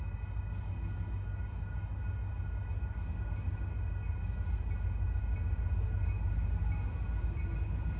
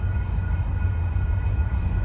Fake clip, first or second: second